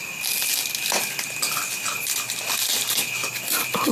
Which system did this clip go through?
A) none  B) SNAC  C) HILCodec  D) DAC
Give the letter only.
A